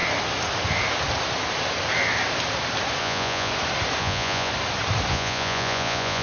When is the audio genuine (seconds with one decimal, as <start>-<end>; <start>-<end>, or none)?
0.0-3.0; 3.5-4.0; 4.5-5.1

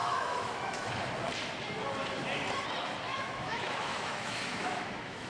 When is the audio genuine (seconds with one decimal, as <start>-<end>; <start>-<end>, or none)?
1.0-3.1